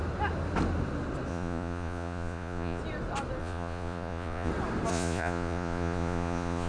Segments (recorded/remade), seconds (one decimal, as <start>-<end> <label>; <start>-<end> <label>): 0.0-1.3 recorded; 1.3-2.8 remade; 2.8-3.4 recorded; 3.4-4.5 remade; 4.5-4.9 recorded; 4.9-6.7 remade